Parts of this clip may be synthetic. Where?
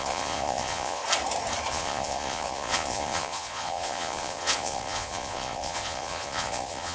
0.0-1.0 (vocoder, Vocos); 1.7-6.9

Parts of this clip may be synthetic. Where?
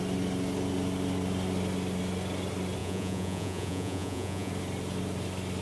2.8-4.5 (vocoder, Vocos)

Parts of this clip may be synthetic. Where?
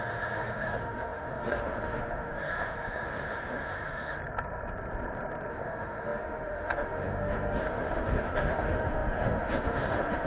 0.0-4.2 (autoencoder, DAC-VAE); 5.5-10.3